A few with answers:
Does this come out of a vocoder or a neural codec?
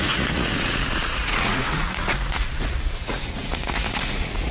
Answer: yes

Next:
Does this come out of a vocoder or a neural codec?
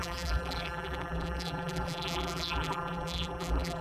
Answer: yes